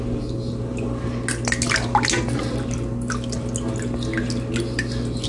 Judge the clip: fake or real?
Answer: real